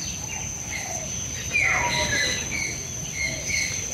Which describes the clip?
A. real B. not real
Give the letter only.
A